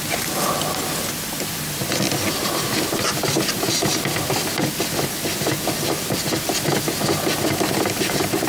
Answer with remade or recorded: recorded